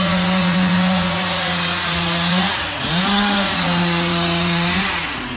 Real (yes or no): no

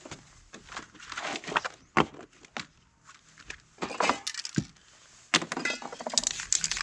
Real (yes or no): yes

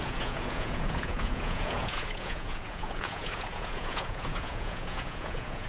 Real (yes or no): no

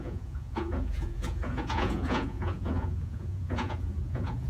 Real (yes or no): no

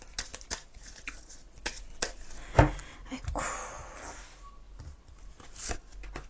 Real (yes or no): yes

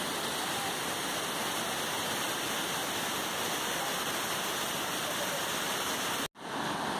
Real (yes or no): yes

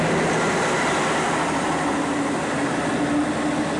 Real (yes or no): yes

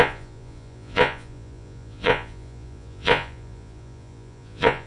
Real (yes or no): no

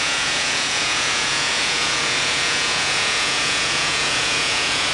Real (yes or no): no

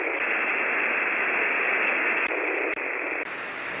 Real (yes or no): yes